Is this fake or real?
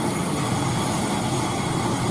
real